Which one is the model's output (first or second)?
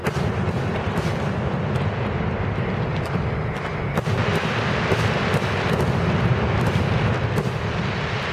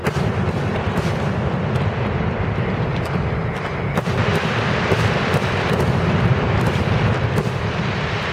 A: second